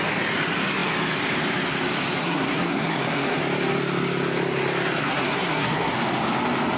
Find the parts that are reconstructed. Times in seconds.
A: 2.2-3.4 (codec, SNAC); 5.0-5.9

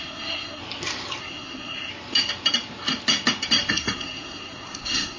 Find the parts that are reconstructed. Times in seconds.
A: 0.0-0.6 (codec, SNAC); 1.2-1.9; 3.7-5.2

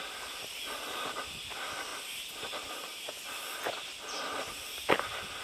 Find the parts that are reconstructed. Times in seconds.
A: none

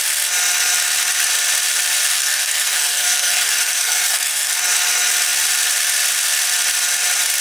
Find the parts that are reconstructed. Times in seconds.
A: 2.1-4.5 (codec, SNAC)

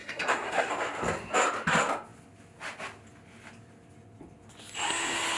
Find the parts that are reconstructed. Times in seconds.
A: 0.0-0.7 (codec, SNAC)